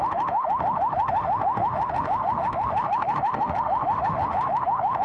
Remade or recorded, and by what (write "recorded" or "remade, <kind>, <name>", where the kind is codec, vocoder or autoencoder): remade, autoencoder, DAC-VAE